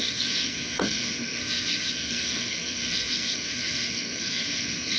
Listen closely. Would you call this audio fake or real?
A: fake